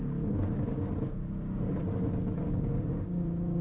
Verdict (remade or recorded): remade